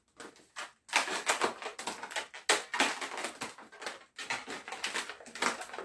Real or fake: real